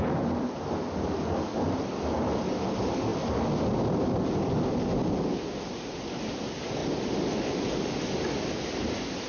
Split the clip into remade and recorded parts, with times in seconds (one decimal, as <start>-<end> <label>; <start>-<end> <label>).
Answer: 0.0-9.3 recorded